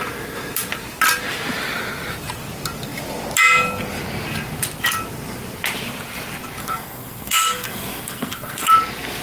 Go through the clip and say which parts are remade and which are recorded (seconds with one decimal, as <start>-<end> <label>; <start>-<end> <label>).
0.0-6.6 recorded; 6.6-8.7 remade; 8.7-9.2 recorded